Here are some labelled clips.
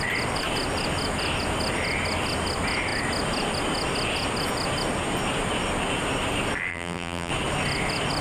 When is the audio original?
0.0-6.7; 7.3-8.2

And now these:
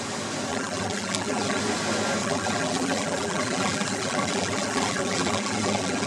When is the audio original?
0.0-0.5; 1.6-2.2

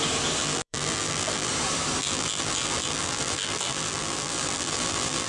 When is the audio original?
0.0-0.4; 1.5-2.0

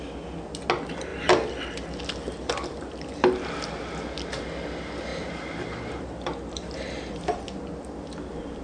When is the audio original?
0.0-1.1; 2.5-5.1; 7.1-8.6